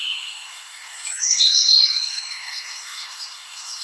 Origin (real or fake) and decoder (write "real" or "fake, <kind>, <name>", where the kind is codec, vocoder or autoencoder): fake, codec, SNAC